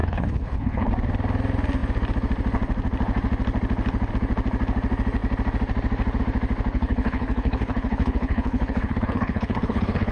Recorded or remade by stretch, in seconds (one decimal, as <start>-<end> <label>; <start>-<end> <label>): 0.0-0.9 remade; 0.9-6.7 recorded; 6.7-10.1 remade